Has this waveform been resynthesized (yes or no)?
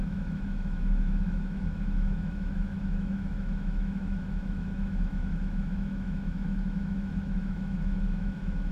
yes